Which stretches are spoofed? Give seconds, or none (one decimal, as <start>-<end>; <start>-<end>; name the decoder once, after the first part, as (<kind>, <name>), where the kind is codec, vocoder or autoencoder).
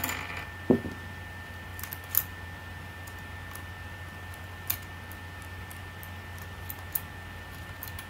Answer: none